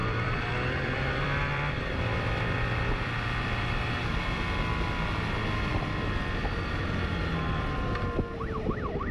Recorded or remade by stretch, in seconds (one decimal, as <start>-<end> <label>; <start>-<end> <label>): 0.0-4.2 remade; 4.2-9.1 recorded